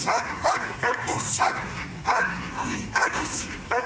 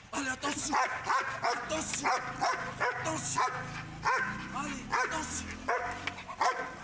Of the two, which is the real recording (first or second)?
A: second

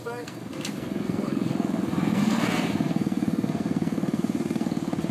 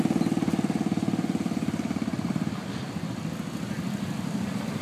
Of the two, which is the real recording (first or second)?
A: second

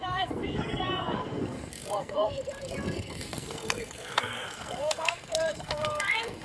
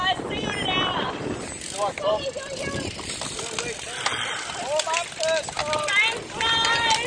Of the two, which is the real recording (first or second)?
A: second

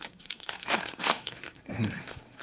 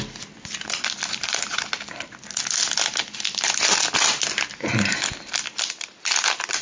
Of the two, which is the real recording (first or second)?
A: second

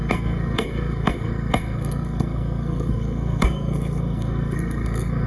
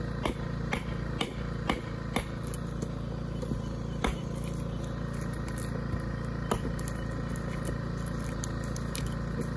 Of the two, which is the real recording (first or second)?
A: second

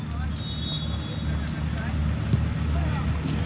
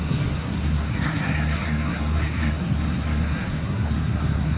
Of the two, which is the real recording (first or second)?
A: first